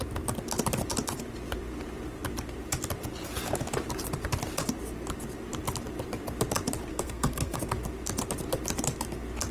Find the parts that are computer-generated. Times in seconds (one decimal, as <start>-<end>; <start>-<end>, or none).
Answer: 6.9-7.6